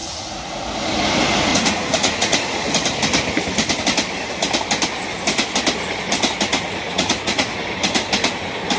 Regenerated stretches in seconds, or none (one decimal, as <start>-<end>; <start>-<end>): 0.0-0.6; 1.5-2.7; 6.5-7.6